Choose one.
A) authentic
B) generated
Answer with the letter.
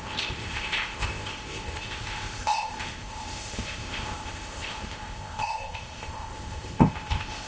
B